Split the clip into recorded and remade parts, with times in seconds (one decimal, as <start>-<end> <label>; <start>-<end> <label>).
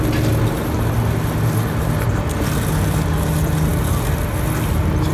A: 0.0-5.1 recorded